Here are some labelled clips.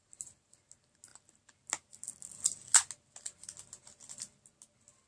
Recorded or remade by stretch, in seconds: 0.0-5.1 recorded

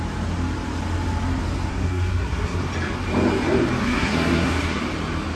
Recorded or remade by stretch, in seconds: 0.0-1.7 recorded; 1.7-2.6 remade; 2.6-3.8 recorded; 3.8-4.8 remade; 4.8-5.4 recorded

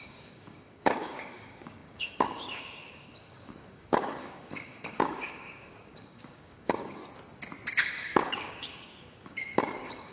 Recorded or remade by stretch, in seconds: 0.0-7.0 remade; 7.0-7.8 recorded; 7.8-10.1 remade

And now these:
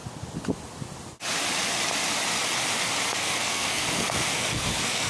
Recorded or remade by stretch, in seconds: 0.0-3.1 recorded; 3.1-5.1 remade